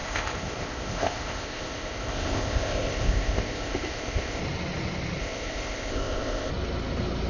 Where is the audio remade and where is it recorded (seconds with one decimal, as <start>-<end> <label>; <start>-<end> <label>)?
0.0-4.4 remade; 4.4-5.2 recorded; 5.2-6.5 remade; 6.5-7.3 recorded